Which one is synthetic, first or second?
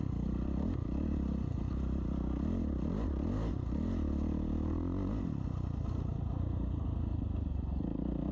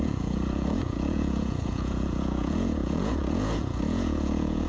second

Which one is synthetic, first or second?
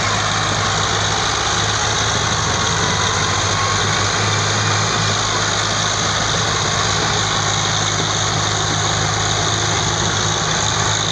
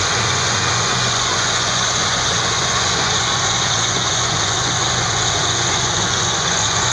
second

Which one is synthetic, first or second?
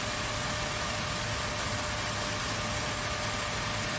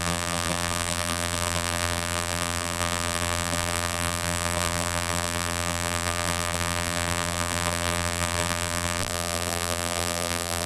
second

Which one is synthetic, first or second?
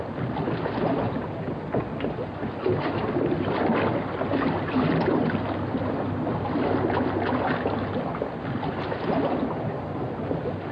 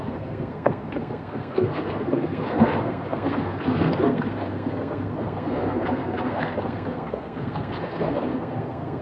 second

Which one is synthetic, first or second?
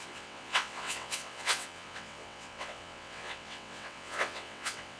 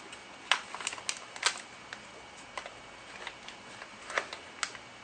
first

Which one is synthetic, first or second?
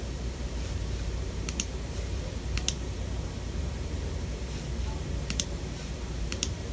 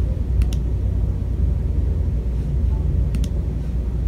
first